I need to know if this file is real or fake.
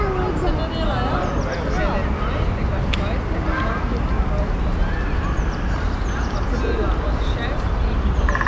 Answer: real